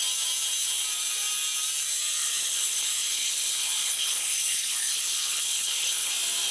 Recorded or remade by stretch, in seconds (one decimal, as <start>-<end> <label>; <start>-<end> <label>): 0.0-2.2 recorded; 2.2-6.1 remade; 6.1-6.5 recorded